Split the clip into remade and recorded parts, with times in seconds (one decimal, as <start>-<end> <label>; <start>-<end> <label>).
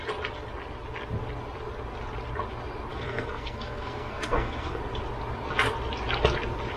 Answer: 0.0-2.9 recorded; 2.9-4.8 remade; 4.8-6.8 recorded